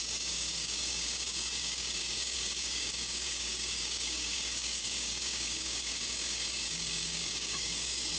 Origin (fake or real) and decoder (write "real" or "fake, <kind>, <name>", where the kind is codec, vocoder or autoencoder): fake, codec, DAC